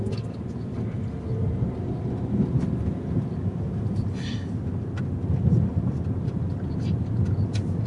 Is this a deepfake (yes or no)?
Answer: no